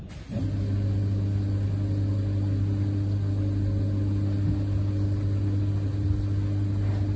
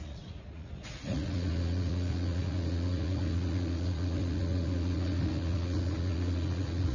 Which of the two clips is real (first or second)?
first